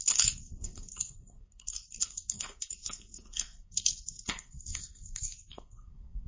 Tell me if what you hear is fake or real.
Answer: fake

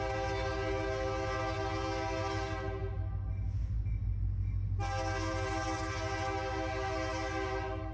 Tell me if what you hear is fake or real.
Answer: real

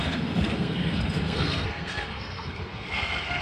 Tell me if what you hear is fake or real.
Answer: fake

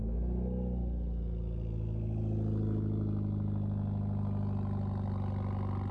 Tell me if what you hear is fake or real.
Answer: real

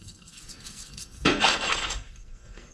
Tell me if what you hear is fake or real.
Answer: fake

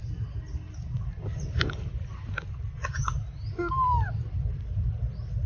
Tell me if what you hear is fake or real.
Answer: real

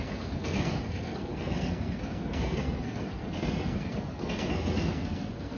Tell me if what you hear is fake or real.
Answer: fake